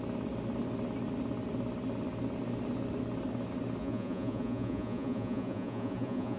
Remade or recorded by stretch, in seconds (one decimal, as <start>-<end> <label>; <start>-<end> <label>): 0.0-3.8 recorded; 3.8-6.4 remade